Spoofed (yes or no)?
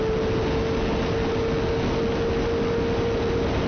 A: no